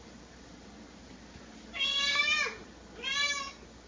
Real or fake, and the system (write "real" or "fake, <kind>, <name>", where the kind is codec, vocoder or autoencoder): real